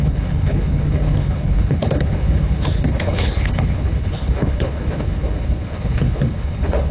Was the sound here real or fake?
fake